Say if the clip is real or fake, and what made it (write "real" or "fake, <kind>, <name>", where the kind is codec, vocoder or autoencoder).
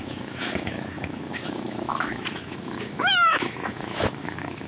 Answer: fake, autoencoder, DAC-VAE